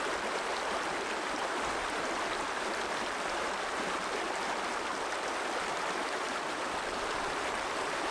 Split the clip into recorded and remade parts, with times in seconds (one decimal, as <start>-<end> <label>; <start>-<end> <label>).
0.0-8.1 recorded